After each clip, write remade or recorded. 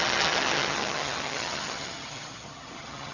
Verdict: remade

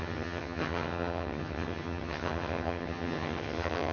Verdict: remade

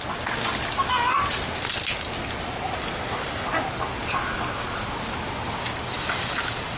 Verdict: recorded